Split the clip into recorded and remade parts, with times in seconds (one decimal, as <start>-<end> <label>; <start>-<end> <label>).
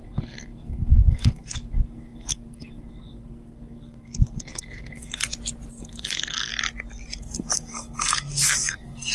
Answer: 0.0-5.2 remade; 5.2-5.7 recorded; 5.7-6.5 remade; 6.5-7.2 recorded; 7.2-9.1 remade